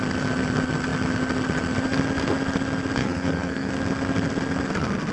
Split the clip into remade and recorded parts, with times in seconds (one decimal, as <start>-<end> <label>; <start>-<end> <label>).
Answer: 0.0-3.0 recorded; 3.0-3.7 remade; 3.7-5.1 recorded